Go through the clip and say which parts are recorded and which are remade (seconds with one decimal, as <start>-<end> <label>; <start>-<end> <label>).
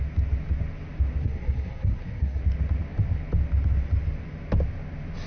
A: 0.0-1.2 recorded; 1.2-2.4 remade; 2.4-5.3 recorded